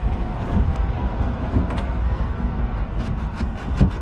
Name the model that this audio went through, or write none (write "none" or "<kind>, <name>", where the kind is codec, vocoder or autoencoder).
codec, SNAC